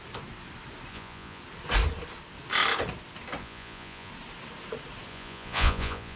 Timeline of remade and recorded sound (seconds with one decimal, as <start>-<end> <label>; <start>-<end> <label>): 0.0-0.9 recorded; 0.9-1.4 remade; 1.4-3.4 recorded; 3.4-4.1 remade; 4.1-5.1 recorded; 5.1-6.2 remade